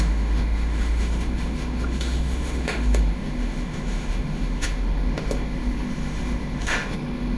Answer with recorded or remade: remade